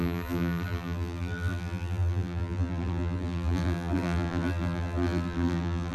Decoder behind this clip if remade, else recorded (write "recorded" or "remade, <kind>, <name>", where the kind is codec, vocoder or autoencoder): remade, vocoder, BigVGAN v2